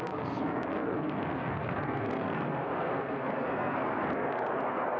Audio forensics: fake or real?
fake